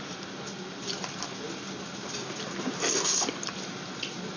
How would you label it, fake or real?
real